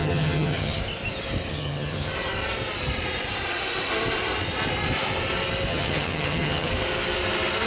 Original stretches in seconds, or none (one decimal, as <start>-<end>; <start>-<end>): 0.8-1.5; 2.1-5.7; 6.7-7.7